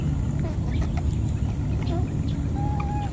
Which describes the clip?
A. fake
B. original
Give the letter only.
B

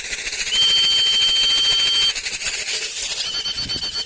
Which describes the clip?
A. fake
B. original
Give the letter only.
B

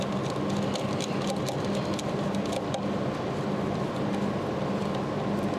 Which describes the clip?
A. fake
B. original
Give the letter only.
B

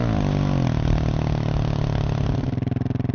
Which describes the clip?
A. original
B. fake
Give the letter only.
A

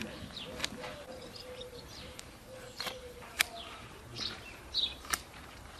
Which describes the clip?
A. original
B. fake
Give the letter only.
B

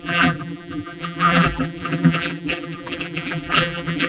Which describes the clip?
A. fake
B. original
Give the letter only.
A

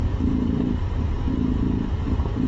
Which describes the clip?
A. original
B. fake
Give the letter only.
B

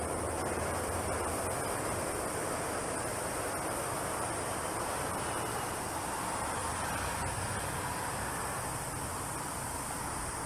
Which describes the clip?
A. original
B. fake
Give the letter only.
B